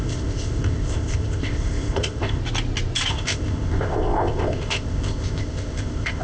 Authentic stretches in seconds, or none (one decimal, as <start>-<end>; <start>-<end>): 2.4-3.1